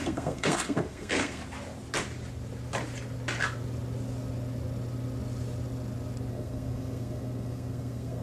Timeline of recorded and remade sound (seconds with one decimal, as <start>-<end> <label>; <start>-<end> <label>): 0.0-1.4 remade; 1.4-6.3 recorded; 6.3-8.2 remade